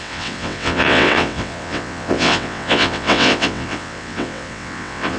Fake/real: fake